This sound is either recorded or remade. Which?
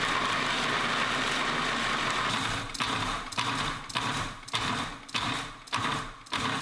recorded